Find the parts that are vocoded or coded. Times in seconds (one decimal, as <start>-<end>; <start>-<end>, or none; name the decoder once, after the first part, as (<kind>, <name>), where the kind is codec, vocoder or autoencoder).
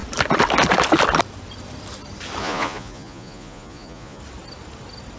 2.4-4.2 (vocoder, Vocos)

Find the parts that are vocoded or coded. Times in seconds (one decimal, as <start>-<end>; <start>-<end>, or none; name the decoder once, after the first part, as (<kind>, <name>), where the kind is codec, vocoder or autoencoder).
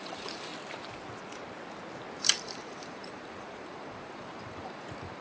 0.0-0.5 (vocoder, BigVGAN v2); 2.2-5.2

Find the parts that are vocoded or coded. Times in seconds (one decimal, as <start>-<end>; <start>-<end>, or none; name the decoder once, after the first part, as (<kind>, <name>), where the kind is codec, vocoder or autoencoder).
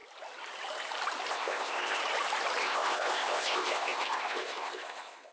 1.3-2.0 (codec, ZipCodec); 2.6-5.3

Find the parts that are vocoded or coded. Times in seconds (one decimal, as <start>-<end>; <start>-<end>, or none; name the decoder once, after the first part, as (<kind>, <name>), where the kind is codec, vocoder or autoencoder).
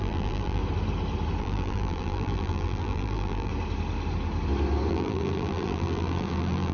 0.0-0.6 (vocoder, BigVGAN v2); 1.4-3.5; 4.9-6.7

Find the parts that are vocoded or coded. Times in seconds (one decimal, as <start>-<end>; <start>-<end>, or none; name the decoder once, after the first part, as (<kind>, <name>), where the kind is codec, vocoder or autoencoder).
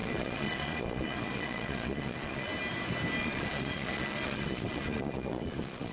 0.0-2.5 (vocoder, Vocos); 3.2-5.9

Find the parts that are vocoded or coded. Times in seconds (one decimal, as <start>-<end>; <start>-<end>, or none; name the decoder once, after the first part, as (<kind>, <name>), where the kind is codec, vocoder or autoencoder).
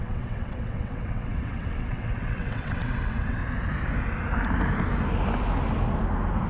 0.0-3.4 (vocoder, WaveNeXt)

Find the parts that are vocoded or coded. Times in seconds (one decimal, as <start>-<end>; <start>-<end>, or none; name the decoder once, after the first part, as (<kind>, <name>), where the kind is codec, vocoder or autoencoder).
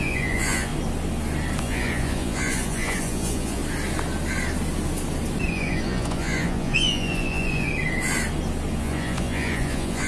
0.0-0.7 (vocoder, Vocos); 1.6-3.6; 5.5-7.7; 8.8-10.1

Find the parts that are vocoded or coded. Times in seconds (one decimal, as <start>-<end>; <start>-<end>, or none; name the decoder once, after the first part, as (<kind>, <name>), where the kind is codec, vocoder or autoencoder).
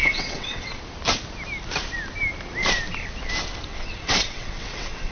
0.0-0.8 (vocoder, WaveNeXt); 3.7-5.1